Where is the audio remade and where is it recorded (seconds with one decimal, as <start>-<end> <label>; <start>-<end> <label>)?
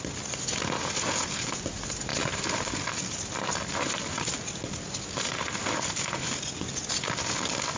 0.0-7.8 recorded